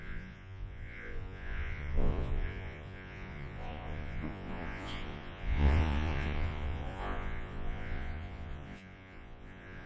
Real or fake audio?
fake